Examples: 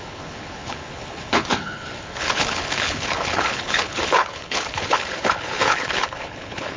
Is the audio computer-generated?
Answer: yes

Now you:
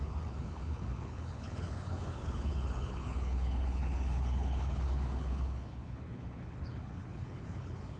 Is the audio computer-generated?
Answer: yes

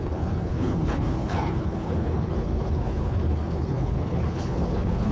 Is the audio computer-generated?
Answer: yes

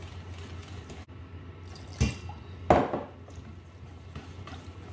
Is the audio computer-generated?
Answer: no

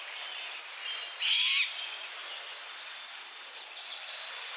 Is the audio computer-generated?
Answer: no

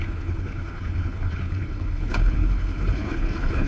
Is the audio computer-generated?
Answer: yes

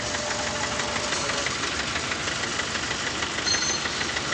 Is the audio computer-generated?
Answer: no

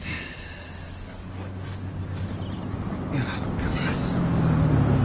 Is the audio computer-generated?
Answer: no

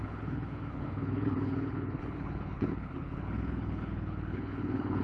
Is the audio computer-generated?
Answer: yes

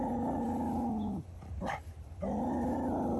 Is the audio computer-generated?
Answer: no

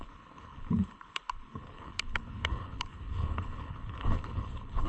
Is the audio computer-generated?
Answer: yes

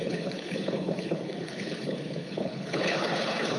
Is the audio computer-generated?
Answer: yes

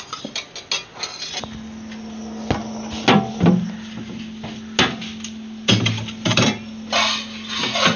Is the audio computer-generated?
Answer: no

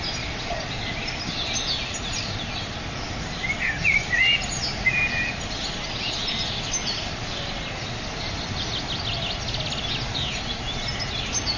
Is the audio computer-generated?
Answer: no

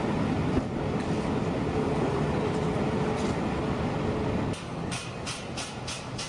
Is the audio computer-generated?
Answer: no